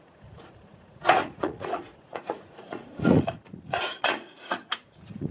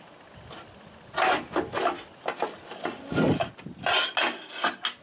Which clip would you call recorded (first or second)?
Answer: second